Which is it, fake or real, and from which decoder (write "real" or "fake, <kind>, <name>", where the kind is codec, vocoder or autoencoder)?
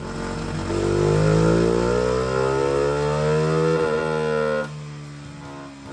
real